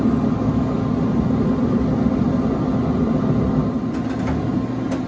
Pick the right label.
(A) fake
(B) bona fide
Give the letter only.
B